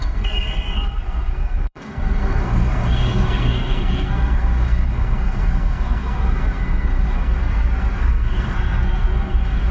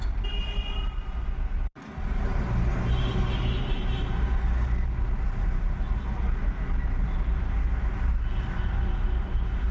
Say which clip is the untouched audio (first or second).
second